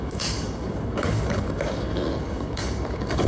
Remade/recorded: remade